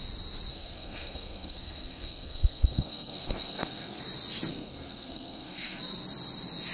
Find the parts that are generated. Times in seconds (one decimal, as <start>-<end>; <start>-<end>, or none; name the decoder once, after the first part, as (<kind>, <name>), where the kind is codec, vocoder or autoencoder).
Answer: 0.5-4.0 (codec, SNAC); 4.5-5.8

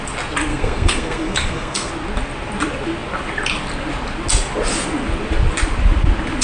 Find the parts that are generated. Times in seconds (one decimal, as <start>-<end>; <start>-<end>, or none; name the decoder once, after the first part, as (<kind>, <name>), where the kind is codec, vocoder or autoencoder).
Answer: 0.5-1.9 (codec, SNAC)

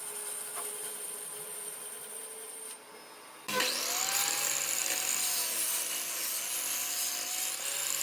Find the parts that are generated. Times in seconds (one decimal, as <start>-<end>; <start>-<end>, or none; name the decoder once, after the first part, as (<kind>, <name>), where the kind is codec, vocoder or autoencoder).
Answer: none

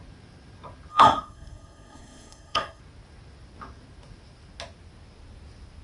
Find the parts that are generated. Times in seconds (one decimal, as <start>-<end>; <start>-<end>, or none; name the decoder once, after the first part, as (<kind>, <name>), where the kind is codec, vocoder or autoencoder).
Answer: 0.9-2.8 (codec, SNAC)

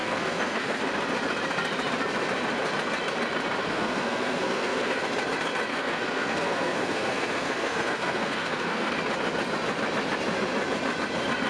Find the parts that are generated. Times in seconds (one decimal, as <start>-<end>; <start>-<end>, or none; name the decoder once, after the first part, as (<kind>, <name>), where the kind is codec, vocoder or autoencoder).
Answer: 0.0-0.8 (codec, SNAC); 3.6-5.0; 5.7-8.9

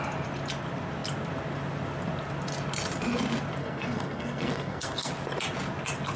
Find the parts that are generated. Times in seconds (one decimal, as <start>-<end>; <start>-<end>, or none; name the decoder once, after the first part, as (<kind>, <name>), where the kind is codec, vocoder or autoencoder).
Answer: 3.6-5.1 (codec, SNAC)

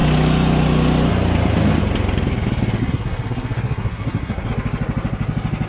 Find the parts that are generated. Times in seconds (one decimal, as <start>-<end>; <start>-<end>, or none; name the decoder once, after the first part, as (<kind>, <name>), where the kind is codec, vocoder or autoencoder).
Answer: 2.8-4.5 (codec, SNAC)

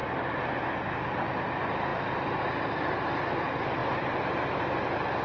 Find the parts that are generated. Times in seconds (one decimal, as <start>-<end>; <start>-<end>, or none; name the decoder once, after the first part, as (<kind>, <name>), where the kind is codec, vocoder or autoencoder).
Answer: none